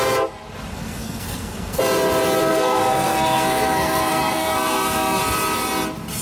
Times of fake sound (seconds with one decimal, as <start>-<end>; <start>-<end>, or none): 0.7-1.8; 2.4-5.2